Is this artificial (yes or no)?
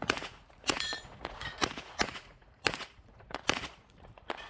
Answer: yes